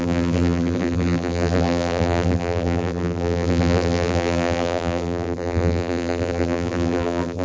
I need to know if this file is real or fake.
fake